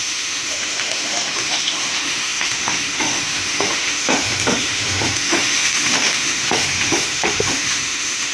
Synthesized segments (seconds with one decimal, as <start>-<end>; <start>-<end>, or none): 0.0-8.3

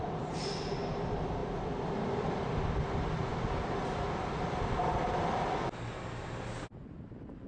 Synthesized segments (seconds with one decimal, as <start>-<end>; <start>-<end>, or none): none